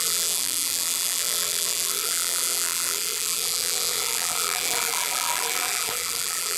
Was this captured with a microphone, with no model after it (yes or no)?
no